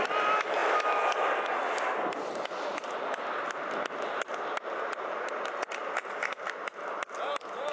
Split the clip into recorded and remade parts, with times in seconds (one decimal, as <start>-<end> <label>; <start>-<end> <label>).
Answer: 0.0-7.7 recorded